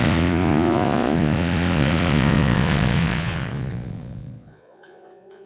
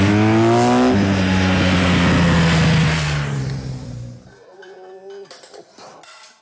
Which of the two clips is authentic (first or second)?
second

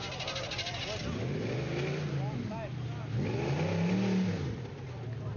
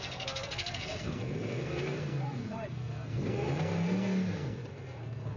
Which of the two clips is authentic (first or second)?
first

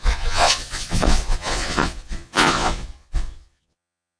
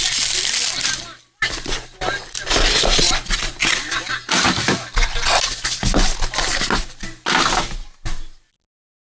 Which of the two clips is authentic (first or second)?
second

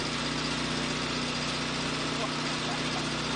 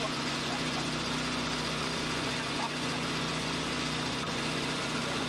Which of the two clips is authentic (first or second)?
first